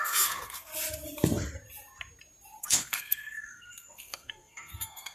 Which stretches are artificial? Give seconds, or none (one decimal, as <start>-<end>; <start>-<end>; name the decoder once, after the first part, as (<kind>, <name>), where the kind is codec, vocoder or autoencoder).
0.0-0.7 (codec, SNAC); 2.6-5.1